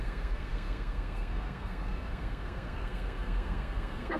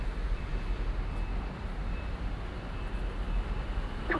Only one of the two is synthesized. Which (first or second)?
first